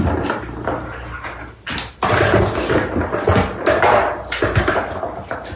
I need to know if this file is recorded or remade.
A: recorded